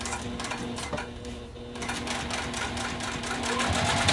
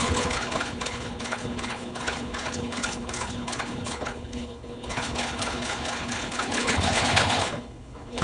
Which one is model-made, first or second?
second